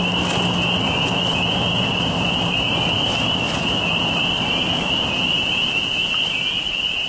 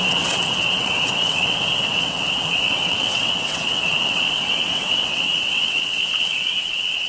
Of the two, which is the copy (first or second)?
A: second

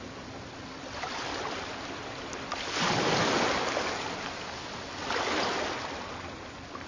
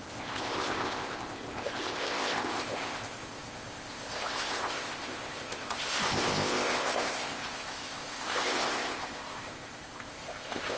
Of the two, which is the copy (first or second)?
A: second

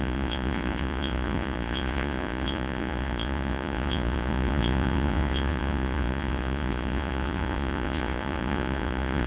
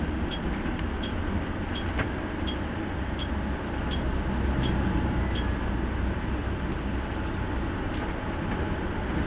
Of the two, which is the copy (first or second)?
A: first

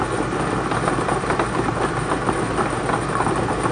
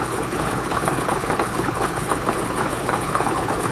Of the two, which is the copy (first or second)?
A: second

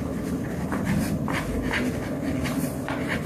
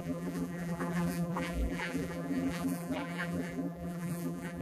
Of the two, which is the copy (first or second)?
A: second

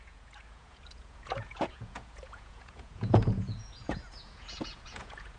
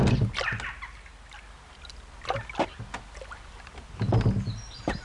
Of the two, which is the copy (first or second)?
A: first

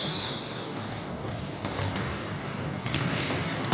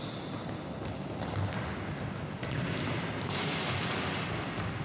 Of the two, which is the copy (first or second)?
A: first